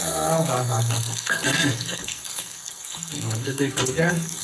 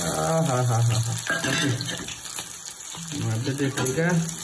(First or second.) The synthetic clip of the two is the first